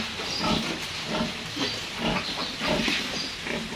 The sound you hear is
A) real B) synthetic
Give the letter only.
A